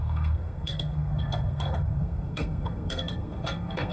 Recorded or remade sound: remade